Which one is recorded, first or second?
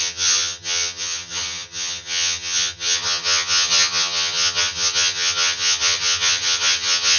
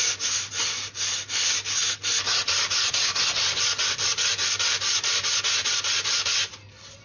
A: second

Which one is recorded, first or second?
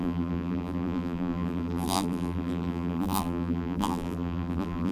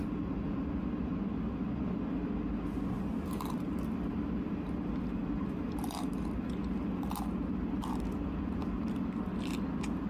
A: second